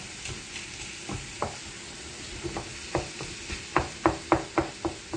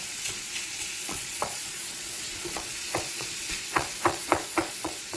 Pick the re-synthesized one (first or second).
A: second